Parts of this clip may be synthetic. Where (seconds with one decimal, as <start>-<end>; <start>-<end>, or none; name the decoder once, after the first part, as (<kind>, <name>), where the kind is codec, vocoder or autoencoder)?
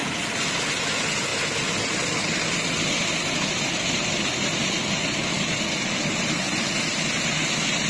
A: none